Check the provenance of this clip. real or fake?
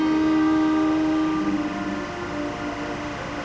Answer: real